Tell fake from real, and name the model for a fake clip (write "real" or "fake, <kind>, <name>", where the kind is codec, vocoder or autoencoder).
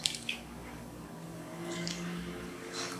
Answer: fake, codec, DAC